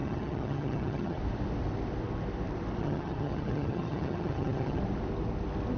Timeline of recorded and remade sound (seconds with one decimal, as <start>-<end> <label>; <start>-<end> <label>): 0.0-1.2 remade; 1.2-2.8 recorded; 2.8-4.8 remade; 4.8-5.8 recorded